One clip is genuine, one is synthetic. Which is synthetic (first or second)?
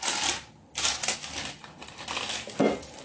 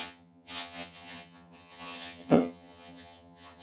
second